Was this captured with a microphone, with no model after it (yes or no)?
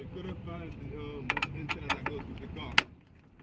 yes